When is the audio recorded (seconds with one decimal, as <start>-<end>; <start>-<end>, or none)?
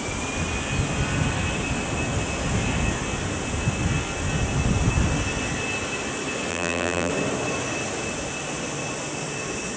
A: 0.0-6.5; 7.1-9.8